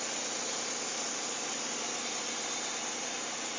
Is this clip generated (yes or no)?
no